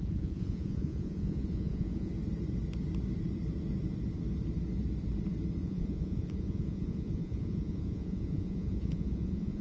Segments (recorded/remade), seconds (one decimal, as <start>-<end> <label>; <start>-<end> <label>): 0.0-2.1 remade; 2.1-5.6 recorded; 5.6-9.6 remade